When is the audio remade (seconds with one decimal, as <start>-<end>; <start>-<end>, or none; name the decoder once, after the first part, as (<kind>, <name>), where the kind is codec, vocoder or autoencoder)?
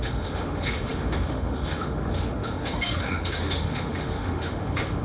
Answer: 0.0-5.0 (autoencoder, DAC-VAE)